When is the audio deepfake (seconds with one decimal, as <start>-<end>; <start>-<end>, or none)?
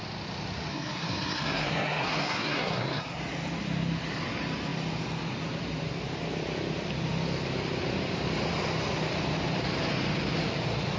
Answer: 0.7-3.2